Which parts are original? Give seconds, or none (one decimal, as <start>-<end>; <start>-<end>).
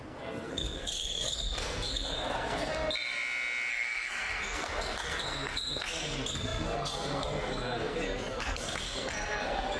2.7-3.7